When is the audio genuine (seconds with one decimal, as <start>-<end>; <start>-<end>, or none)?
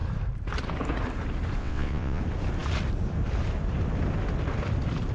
0.0-1.6; 2.2-5.1